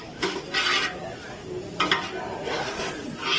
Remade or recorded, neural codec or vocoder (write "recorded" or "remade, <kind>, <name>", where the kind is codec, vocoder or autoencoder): recorded